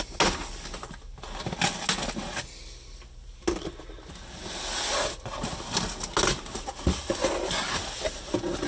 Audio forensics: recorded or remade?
recorded